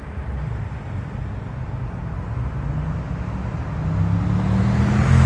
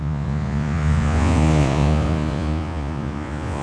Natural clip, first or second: first